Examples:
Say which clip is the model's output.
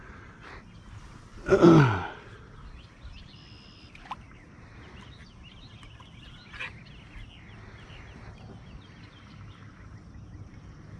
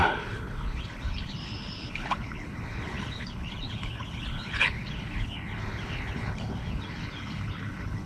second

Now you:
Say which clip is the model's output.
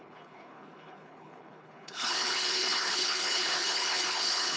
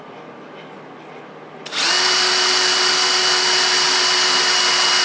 first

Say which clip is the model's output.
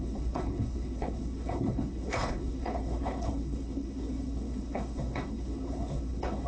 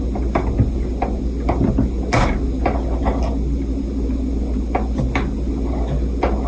first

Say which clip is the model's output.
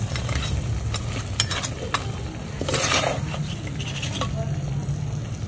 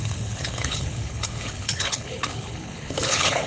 second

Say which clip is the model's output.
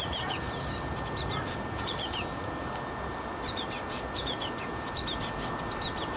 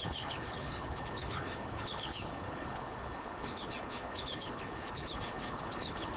second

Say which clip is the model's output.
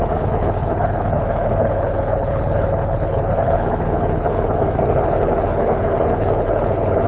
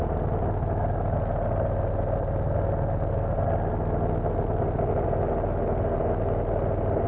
first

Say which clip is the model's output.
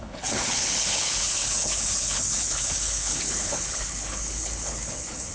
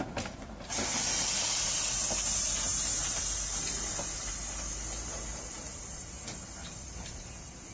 first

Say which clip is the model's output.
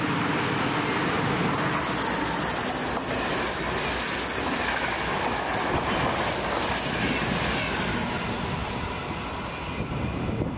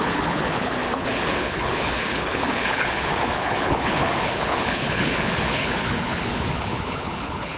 second